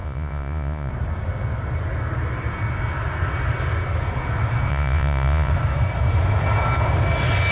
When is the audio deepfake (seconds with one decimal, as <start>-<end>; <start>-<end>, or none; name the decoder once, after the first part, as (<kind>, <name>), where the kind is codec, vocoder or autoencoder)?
0.0-0.9 (vocoder, Vocos); 4.7-5.5